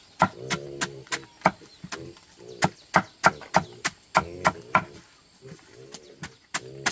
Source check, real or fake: real